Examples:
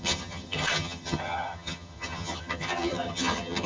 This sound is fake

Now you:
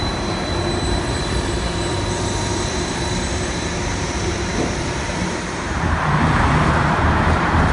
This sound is fake